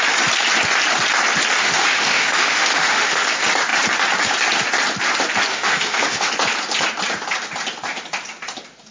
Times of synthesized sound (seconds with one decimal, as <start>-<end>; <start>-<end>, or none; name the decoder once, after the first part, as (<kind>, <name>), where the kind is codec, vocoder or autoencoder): 1.6-3.2 (autoencoder, DAC-VAE); 5.5-6.3